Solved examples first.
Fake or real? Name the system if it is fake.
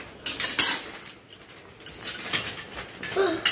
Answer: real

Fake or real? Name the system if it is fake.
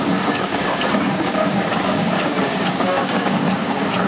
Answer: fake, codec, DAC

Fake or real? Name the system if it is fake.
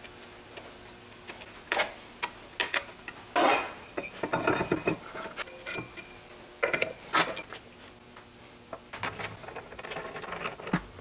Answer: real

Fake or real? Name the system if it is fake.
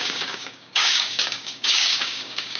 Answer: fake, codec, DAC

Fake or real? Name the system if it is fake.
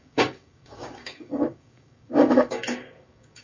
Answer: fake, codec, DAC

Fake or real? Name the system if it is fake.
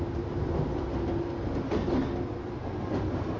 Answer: real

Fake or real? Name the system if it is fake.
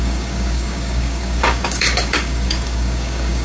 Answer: fake, codec, DAC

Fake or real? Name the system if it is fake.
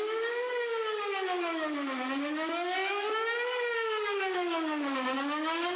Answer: fake, codec, DAC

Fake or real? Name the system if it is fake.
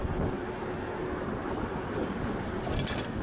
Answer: real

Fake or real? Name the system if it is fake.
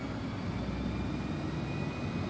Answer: real